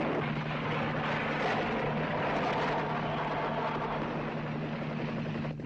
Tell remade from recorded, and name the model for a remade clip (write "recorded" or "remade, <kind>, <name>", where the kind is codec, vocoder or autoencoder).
recorded